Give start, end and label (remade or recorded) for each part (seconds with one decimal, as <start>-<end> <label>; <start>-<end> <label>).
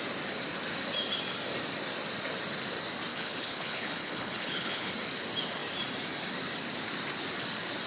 0.0-3.1 recorded; 3.1-4.9 remade; 4.9-7.9 recorded